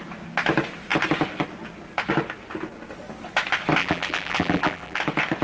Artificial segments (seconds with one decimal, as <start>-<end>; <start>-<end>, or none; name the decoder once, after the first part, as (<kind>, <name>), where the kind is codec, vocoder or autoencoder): 3.8-5.0 (vocoder, BigVGAN v2)